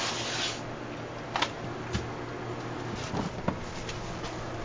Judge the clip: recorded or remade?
recorded